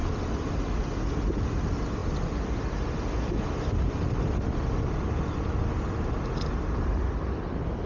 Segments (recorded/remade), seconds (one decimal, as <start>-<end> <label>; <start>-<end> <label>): 0.0-7.9 recorded